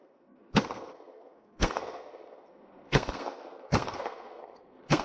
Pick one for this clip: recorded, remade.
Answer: remade